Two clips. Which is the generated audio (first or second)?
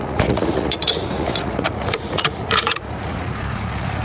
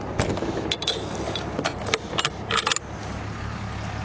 first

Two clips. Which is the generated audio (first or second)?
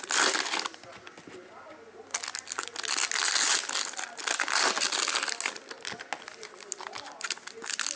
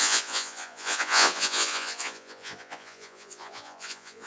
second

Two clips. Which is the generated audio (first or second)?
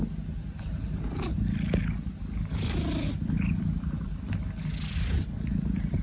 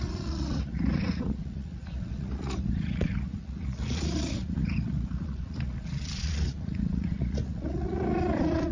second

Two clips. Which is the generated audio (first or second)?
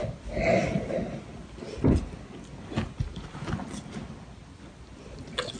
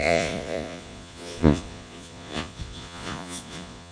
second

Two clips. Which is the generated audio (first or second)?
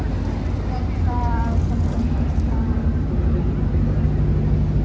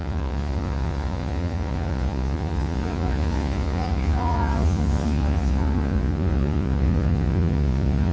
second